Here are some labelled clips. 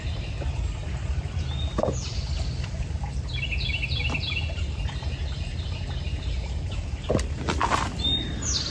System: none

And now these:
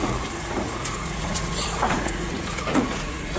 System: vocoder, Vocos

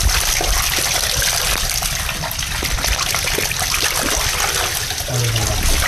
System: none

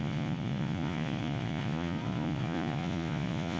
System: vocoder, Vocos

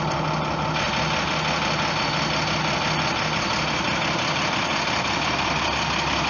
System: none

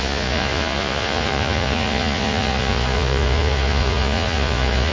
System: vocoder, Vocos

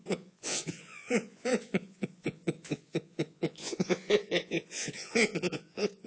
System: vocoder, Vocos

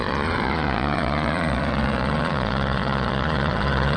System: vocoder, Vocos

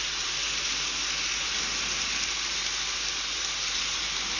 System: none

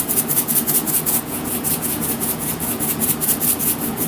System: vocoder, Vocos